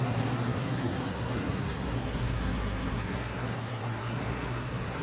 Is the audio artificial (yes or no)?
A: yes